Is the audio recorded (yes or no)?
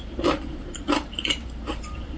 no